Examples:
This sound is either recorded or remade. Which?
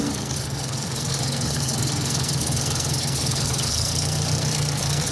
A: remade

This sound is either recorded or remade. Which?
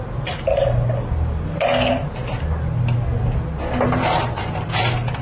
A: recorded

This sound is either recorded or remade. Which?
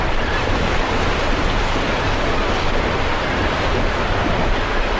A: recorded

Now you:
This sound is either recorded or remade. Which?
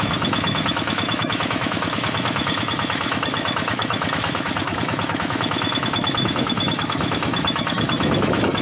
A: remade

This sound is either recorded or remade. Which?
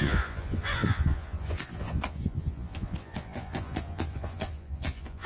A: remade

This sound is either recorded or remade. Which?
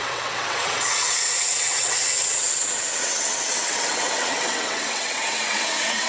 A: remade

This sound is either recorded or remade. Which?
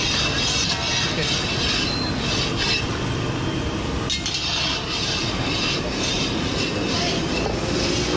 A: recorded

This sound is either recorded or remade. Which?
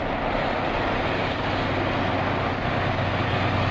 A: recorded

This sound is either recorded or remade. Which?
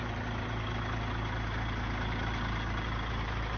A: recorded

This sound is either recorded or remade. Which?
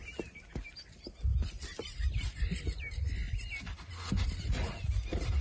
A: recorded